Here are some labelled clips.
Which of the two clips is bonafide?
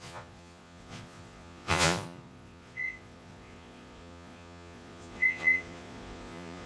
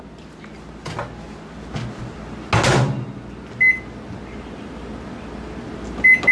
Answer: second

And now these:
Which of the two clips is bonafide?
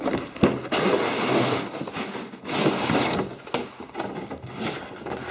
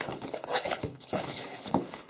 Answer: first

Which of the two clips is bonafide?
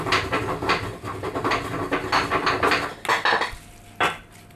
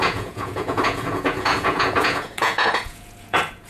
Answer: first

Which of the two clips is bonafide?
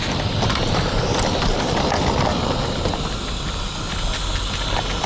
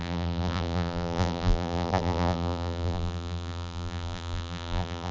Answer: first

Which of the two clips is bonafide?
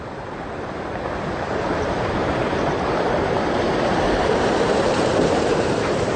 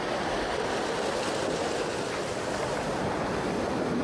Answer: second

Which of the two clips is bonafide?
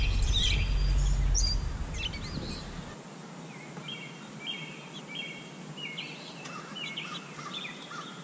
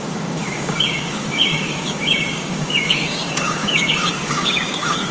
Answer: first